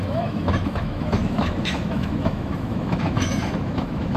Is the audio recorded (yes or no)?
no